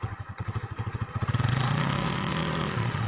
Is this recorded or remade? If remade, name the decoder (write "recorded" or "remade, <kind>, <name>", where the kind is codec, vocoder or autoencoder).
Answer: remade, vocoder, Vocos